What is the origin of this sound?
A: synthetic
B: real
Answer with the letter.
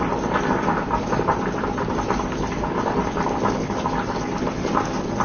B